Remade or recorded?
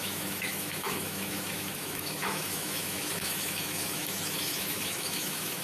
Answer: remade